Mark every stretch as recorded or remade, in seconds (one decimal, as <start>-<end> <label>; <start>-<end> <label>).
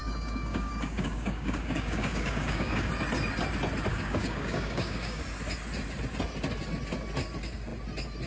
0.0-2.9 remade; 2.9-3.9 recorded; 3.9-5.2 remade; 5.2-8.3 recorded